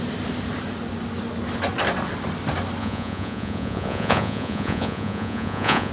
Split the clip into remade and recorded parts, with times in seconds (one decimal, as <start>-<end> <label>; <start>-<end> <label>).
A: 0.0-2.8 recorded; 2.8-5.9 remade